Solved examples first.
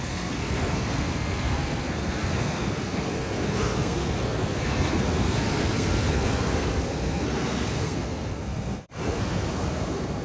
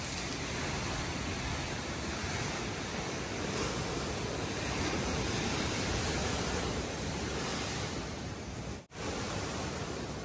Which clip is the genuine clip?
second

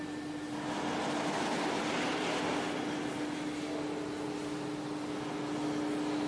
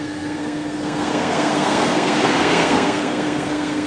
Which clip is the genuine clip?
first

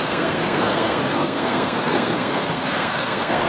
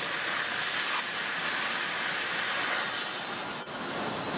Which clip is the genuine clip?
second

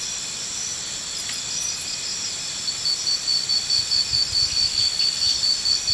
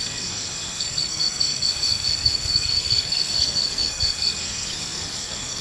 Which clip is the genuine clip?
first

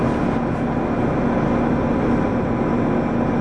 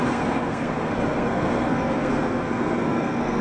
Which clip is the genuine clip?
first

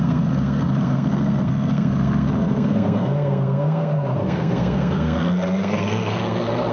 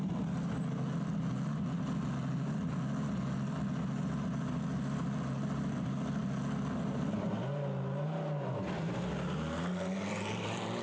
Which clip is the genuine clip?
second